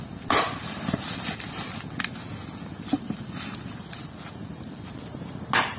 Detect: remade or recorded recorded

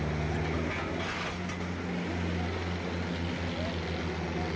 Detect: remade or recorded recorded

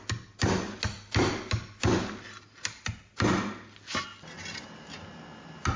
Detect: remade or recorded recorded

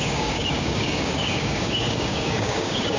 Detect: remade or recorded remade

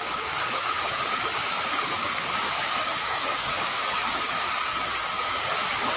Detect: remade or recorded remade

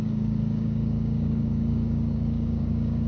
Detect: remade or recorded remade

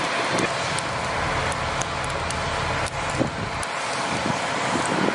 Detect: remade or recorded recorded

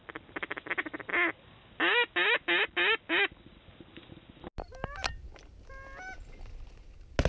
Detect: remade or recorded recorded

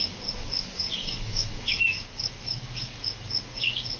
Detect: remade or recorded remade